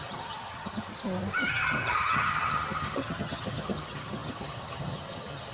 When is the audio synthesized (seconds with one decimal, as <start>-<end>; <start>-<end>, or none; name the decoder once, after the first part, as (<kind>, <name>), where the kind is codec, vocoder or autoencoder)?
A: 0.0-0.9 (vocoder, HiFi-GAN); 1.5-5.5

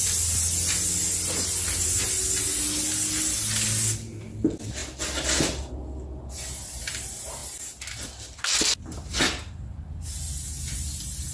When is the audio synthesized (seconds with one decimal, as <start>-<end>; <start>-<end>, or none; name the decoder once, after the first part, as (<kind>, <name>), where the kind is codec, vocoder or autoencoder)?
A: none

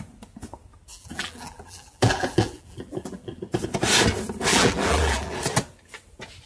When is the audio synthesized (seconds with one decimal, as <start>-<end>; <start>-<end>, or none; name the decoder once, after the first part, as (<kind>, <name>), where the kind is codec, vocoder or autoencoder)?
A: 0.9-3.4 (vocoder, BigVGAN v2); 4.5-5.4

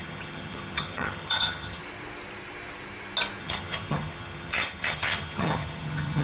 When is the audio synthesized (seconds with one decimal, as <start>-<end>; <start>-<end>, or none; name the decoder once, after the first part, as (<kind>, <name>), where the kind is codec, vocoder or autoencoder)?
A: 0.0-1.8 (vocoder, HiFi-GAN); 3.4-6.2

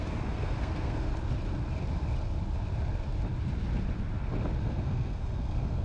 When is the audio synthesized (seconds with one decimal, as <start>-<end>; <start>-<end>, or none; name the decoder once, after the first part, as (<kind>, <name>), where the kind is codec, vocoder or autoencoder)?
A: 0.0-1.1 (codec, SNAC); 4.6-5.8

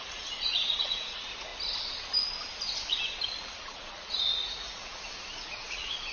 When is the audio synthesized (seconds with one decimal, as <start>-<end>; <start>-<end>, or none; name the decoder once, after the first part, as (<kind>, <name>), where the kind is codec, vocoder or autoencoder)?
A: 0.0-1.5 (vocoder, Vocos); 3.4-6.1